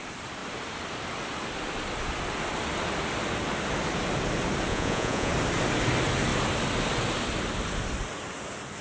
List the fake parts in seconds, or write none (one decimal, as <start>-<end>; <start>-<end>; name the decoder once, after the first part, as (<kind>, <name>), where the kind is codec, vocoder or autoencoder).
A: 4.7-5.3 (vocoder, Vocos)